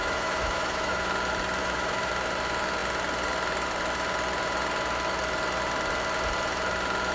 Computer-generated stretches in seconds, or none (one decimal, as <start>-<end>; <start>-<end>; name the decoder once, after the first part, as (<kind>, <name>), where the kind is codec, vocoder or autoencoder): 0.0-1.1 (autoencoder, DAC-VAE); 1.6-2.1